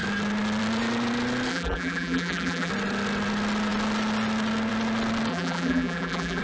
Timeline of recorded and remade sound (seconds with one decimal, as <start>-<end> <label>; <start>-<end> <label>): 0.0-1.5 recorded; 1.5-2.7 remade; 2.7-5.3 recorded; 5.3-6.4 remade

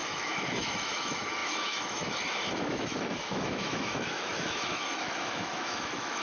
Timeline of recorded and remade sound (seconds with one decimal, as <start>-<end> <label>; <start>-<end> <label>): 0.0-6.2 remade

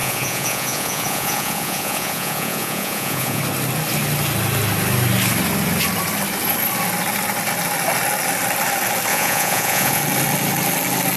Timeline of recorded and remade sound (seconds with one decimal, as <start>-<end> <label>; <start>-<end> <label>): 0.0-3.4 remade; 3.4-9.1 recorded; 9.1-10.0 remade; 10.0-11.2 recorded